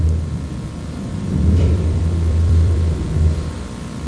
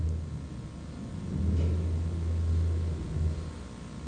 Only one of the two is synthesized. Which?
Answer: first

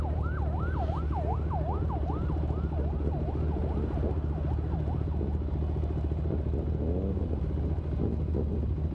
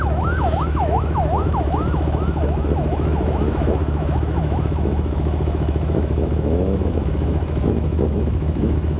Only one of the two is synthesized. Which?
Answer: second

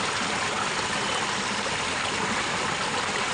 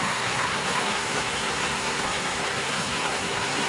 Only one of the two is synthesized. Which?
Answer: second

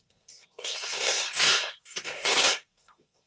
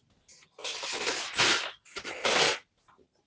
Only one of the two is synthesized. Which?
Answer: first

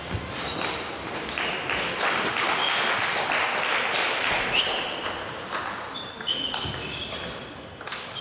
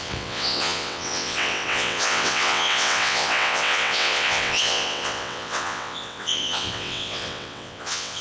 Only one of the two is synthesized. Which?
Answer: second